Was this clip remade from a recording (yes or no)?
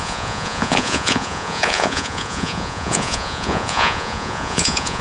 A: yes